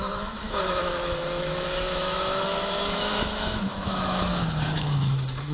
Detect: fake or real fake